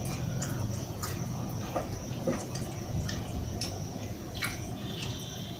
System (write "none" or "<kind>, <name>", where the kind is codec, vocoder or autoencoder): vocoder, Vocos